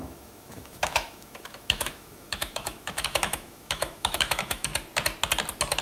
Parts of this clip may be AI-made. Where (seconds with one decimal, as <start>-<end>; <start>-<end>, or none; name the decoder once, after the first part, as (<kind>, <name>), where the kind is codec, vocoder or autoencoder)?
0.0-4.7 (autoencoder, DAC-VAE)